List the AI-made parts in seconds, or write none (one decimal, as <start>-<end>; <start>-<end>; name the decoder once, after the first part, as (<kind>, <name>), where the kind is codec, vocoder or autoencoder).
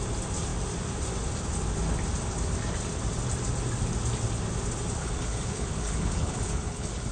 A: 5.0-7.1 (codec, HILCodec)